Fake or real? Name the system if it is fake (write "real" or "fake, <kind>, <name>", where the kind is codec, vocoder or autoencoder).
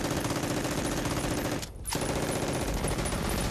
real